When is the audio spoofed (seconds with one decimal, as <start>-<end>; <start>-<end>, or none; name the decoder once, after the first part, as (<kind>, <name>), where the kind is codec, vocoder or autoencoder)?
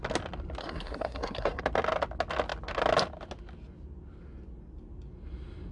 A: 0.6-1.6 (codec, SNAC)